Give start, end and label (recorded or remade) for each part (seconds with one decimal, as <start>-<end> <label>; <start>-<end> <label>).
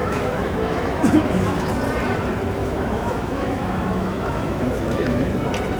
0.0-1.7 remade; 1.7-2.6 recorded; 2.6-5.3 remade; 5.3-5.8 recorded